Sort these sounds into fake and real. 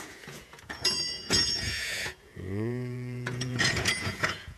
fake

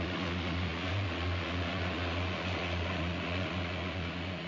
fake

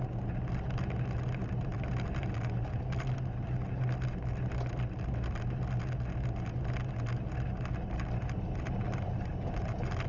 real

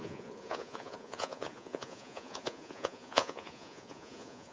fake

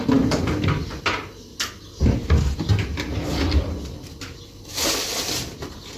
real